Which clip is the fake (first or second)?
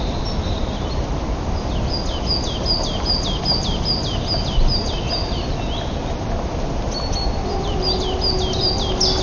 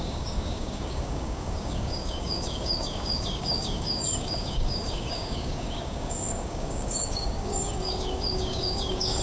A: second